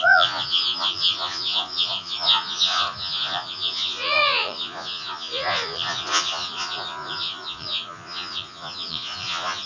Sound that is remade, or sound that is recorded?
remade